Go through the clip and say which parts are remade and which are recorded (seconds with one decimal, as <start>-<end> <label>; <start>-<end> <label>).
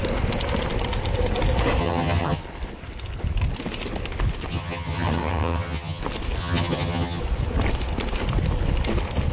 0.0-1.8 recorded; 1.8-2.4 remade; 2.4-4.5 recorded; 4.5-6.0 remade; 6.0-6.4 recorded; 6.4-7.2 remade; 7.2-9.3 recorded